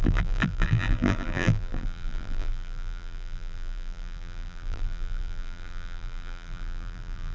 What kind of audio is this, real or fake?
fake